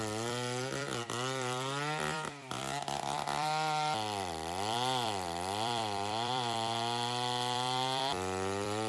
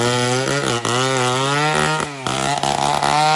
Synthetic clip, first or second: first